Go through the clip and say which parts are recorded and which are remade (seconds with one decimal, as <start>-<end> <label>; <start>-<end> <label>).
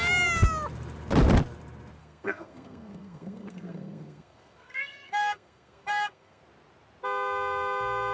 0.0-2.0 recorded; 2.0-6.4 remade; 6.4-8.1 recorded